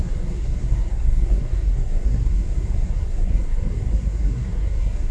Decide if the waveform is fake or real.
fake